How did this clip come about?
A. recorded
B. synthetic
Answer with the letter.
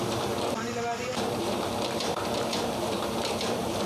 B